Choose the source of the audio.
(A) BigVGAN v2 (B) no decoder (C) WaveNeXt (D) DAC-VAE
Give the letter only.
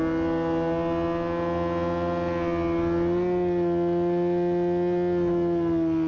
B